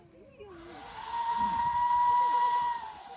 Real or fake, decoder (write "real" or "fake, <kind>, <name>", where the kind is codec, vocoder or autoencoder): real